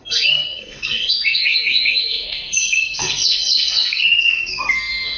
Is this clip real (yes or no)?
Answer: no